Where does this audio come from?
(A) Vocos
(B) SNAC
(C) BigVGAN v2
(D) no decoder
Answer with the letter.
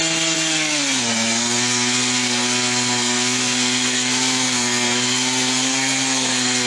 B